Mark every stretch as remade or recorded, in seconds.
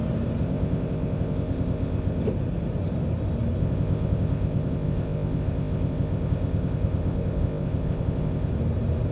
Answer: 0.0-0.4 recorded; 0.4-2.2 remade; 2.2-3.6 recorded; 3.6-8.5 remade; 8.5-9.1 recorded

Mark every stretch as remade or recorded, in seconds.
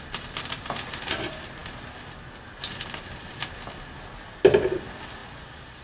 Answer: 0.0-5.8 recorded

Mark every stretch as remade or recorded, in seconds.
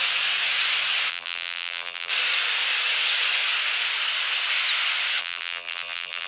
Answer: 0.0-1.1 recorded; 1.1-2.1 remade; 2.1-5.2 recorded; 5.2-6.3 remade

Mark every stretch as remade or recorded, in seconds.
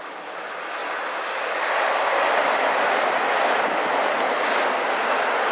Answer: 0.0-5.5 recorded